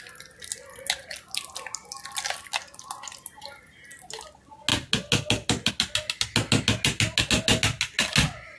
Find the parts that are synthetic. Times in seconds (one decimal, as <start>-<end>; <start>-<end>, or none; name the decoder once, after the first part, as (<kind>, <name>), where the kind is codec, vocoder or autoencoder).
none